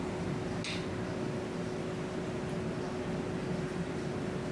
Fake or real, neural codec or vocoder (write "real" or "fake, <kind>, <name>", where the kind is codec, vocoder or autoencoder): real